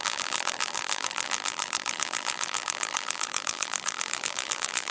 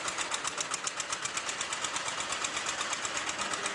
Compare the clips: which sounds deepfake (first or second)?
first